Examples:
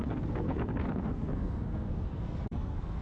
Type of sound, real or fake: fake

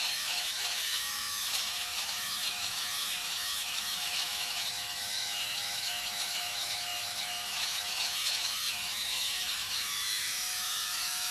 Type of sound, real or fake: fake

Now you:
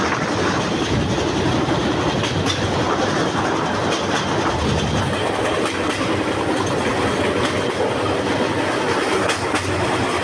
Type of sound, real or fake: real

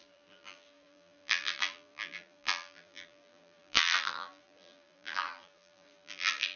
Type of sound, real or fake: fake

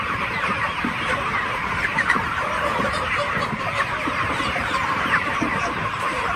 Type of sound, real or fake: fake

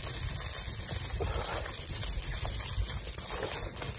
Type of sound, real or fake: real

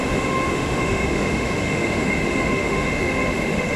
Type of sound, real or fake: fake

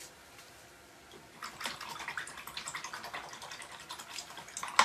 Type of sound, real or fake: real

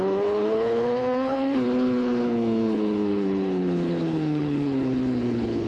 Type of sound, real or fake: fake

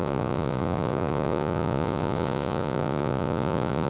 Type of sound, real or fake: fake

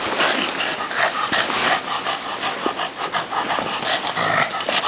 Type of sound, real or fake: real